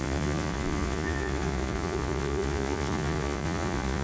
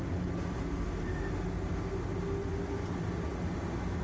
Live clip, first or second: second